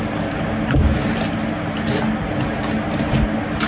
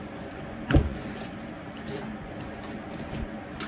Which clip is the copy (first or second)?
second